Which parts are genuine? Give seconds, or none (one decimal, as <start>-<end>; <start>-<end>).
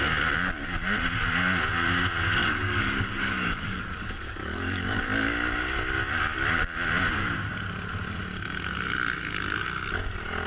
0.0-2.4; 5.0-10.5